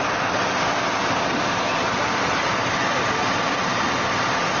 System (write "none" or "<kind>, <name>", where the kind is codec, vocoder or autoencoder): vocoder, BigVGAN v2